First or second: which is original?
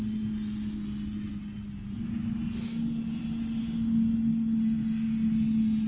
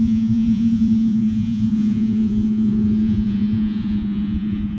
first